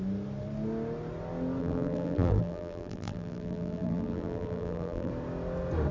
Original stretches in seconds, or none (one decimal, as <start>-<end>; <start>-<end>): 0.0-1.6; 5.1-5.9